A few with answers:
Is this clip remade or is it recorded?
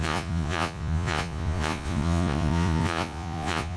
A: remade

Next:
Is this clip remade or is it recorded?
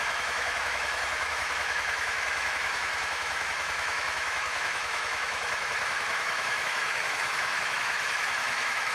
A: remade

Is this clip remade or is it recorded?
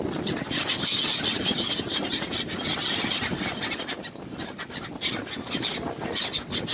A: recorded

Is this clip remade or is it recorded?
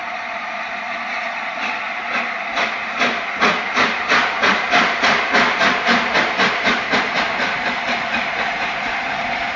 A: recorded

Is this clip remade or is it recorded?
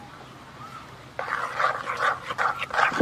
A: recorded